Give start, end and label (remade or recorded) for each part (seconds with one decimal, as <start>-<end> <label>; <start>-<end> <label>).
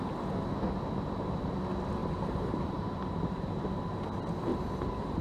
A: 0.0-2.0 recorded; 2.0-3.7 remade; 3.7-4.5 recorded; 4.5-5.2 remade